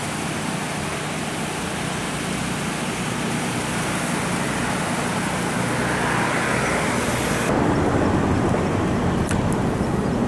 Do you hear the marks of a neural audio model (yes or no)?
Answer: no